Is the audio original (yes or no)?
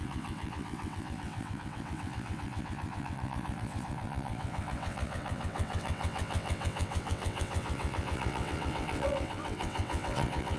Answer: no